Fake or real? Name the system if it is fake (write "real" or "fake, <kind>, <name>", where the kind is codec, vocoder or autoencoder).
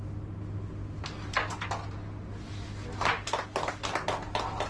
real